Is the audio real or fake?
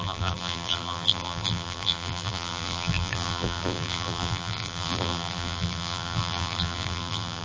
fake